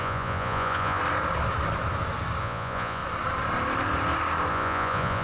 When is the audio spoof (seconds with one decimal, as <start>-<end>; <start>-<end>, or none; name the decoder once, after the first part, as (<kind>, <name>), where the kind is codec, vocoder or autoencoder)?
0.0-1.0 (vocoder, Vocos); 2.4-3.0; 4.5-5.2